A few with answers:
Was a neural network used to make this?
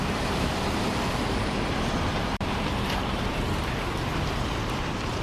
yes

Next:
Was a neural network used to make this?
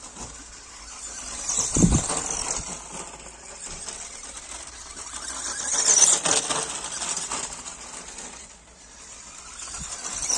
no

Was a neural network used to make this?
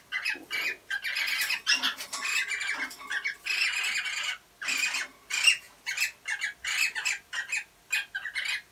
no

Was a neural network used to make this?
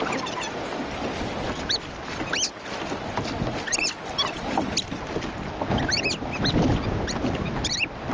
no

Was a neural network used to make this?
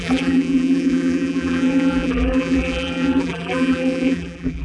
yes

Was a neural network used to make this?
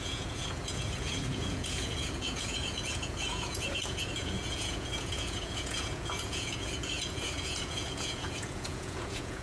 yes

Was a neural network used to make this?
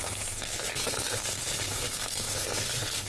yes